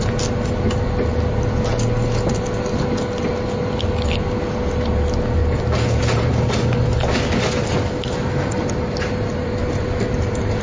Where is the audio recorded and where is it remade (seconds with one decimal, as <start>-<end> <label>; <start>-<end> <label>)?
0.0-5.4 recorded; 5.4-7.2 remade; 7.2-10.6 recorded